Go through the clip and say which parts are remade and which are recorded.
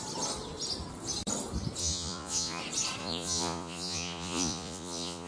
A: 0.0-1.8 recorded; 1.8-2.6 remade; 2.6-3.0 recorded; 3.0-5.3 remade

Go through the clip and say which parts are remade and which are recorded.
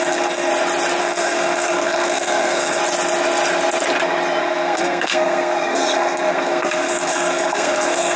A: 0.0-0.5 remade; 0.5-1.0 recorded; 1.0-2.8 remade; 2.8-4.4 recorded; 4.4-8.2 remade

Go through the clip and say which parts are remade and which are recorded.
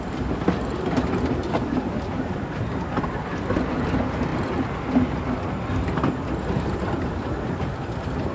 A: 0.0-8.3 recorded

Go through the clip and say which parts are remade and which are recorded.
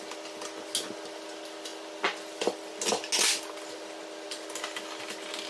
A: 0.0-5.5 recorded